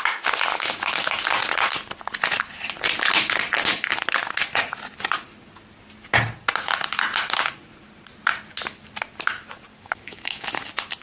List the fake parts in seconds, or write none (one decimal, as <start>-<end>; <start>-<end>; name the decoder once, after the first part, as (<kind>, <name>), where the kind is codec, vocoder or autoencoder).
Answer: 0.5-1.2 (autoencoder, DAC-VAE); 9.7-10.5